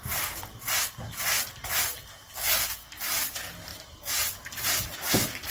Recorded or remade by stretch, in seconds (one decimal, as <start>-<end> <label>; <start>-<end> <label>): 0.0-5.5 recorded